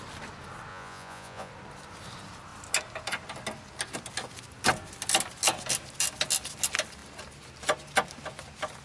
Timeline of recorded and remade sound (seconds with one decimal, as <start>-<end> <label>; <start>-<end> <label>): 0.0-0.7 recorded; 0.7-1.5 remade; 1.5-8.8 recorded